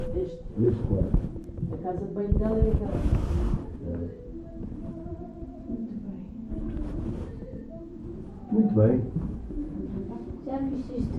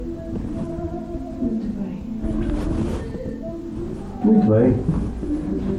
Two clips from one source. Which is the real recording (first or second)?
second